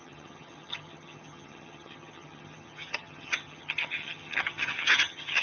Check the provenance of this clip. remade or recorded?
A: remade